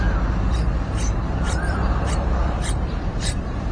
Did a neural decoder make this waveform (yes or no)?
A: yes